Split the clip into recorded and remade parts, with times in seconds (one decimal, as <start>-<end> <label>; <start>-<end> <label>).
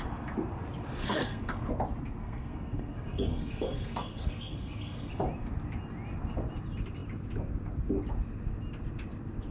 0.0-1.0 recorded; 1.0-1.7 remade; 1.7-2.2 recorded; 2.2-5.1 remade; 5.1-9.5 recorded